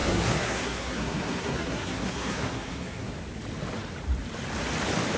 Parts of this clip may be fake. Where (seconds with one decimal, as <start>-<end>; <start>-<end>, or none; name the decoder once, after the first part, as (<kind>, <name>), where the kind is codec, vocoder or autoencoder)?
0.0-3.1 (codec, SNAC)